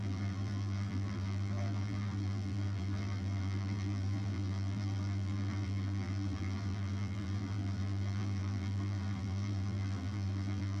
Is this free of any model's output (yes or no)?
no